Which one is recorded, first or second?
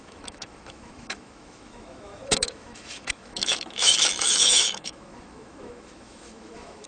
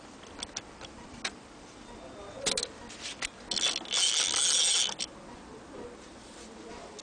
second